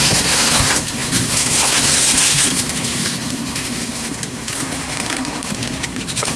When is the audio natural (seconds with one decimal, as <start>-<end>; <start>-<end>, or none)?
none